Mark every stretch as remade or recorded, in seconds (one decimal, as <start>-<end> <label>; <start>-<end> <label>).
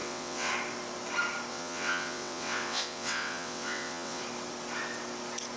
0.0-0.5 remade; 0.5-1.5 recorded; 1.5-4.2 remade; 4.2-5.6 recorded